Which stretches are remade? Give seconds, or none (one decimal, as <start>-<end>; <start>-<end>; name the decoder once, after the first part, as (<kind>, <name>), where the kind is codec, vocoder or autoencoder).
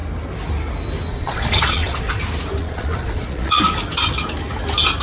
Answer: 1.1-2.2 (vocoder, Vocos); 2.6-3.6